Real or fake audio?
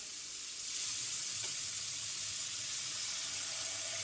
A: fake